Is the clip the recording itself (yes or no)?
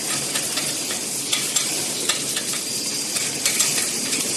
no